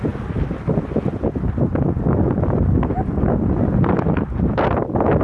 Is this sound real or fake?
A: real